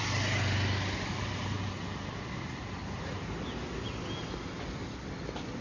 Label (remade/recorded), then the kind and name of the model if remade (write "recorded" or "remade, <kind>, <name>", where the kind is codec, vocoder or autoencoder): recorded